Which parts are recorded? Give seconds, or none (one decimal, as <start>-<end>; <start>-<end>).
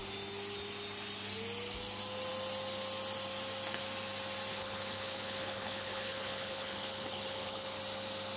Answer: 0.0-4.5; 7.8-8.4